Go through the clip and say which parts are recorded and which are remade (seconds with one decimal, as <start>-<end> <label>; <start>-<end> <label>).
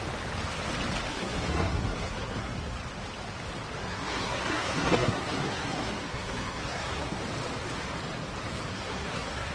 0.0-1.1 recorded; 1.1-2.7 remade; 2.7-3.8 recorded; 3.8-7.2 remade; 7.2-8.7 recorded; 8.7-9.5 remade